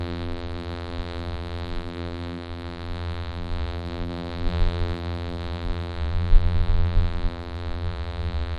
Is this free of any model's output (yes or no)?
no